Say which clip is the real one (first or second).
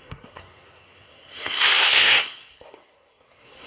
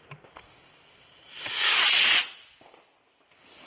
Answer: second